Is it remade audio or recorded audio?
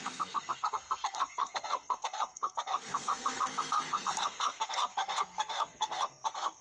remade